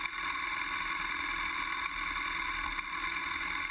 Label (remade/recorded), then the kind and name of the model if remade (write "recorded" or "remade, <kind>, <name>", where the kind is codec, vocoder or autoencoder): recorded